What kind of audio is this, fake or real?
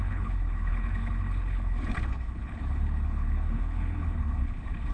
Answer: fake